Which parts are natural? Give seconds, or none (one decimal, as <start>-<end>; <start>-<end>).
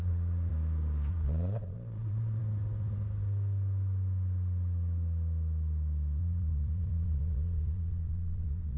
0.5-1.1; 2.4-6.2